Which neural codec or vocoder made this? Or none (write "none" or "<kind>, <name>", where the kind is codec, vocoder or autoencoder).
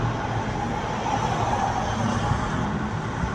none